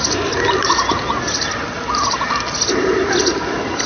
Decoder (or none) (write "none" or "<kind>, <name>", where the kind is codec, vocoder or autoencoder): none